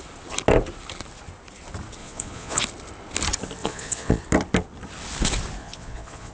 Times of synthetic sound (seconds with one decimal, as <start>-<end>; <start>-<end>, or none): 2.0-2.6; 3.6-4.2; 5.6-6.3